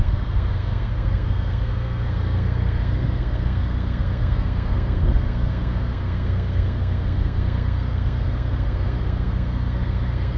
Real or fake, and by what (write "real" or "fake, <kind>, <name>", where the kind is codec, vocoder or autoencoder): fake, codec, SNAC